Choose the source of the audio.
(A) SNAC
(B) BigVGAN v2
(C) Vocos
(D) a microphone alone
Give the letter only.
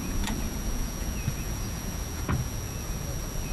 C